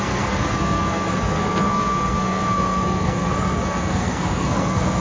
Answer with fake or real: fake